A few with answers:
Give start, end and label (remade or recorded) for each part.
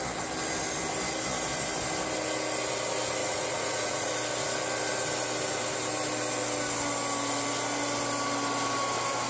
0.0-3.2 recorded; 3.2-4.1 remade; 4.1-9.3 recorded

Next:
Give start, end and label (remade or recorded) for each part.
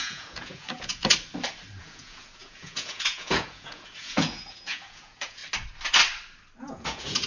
0.0-1.1 remade; 1.1-1.8 recorded; 1.8-5.4 remade; 5.4-6.6 recorded; 6.6-7.3 remade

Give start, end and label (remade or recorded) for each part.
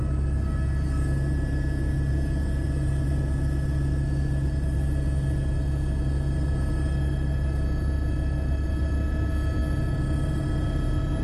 0.0-11.2 recorded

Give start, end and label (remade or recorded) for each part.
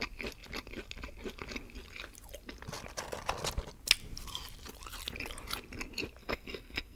0.0-6.2 recorded; 6.2-7.0 remade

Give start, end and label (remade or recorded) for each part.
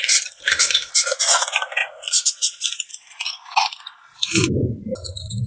0.0-0.4 recorded; 0.4-0.9 remade; 0.9-5.5 recorded